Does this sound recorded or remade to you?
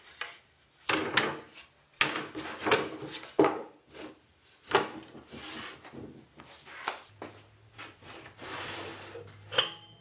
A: recorded